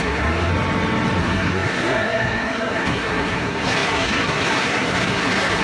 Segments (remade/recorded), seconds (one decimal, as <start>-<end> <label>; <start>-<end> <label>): 0.0-0.5 remade; 0.5-1.2 recorded; 1.2-5.6 remade